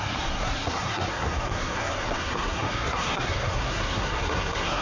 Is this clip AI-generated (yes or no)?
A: yes